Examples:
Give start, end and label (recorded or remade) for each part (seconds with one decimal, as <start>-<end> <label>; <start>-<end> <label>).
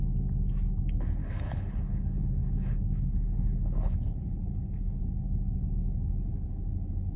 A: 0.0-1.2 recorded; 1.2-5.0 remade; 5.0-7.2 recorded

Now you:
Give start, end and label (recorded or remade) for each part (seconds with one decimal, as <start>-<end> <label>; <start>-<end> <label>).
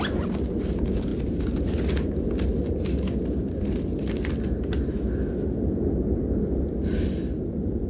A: 0.0-7.9 recorded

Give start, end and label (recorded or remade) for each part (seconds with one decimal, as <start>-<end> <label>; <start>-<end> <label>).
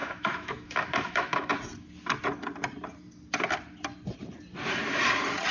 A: 0.0-1.5 remade; 1.5-5.5 recorded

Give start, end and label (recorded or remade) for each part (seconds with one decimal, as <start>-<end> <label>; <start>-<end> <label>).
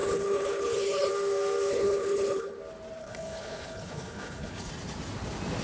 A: 0.0-1.1 remade; 1.1-1.7 recorded; 1.7-2.6 remade; 2.6-3.0 recorded; 3.0-4.7 remade; 4.7-5.6 recorded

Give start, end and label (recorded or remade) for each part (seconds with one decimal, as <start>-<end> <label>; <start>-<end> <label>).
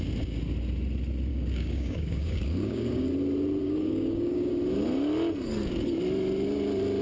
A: 0.0-1.3 recorded; 1.3-3.1 remade; 3.1-3.6 recorded; 3.6-4.5 remade; 4.5-7.0 recorded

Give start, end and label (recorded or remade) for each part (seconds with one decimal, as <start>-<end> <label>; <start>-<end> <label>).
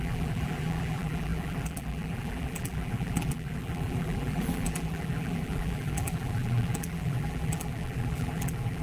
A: 0.0-8.8 remade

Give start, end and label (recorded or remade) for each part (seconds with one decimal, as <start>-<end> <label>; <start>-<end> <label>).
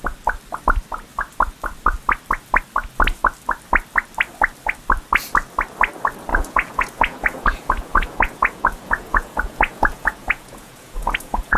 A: 0.0-6.3 recorded; 6.3-11.6 remade